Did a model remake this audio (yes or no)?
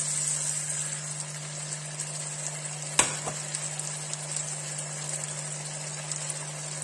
no